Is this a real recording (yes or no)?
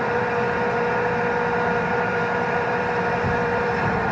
no